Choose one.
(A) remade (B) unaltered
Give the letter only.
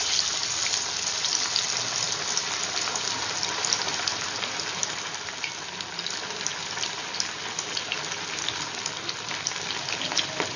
B